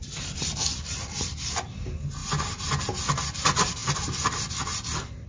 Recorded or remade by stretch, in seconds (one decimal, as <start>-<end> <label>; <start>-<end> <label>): 0.0-5.3 recorded